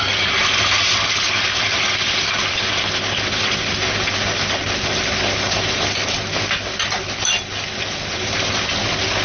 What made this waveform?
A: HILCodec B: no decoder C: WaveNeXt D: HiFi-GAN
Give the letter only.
B